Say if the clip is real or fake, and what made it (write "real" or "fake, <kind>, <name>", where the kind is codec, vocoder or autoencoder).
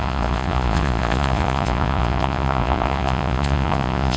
fake, vocoder, Vocos